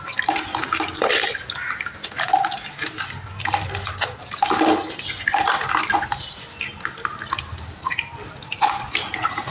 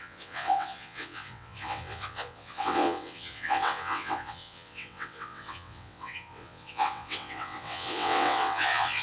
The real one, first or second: first